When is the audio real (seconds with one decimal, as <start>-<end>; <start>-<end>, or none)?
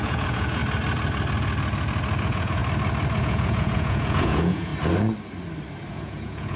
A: 0.6-2.2; 2.6-3.2; 4.7-5.9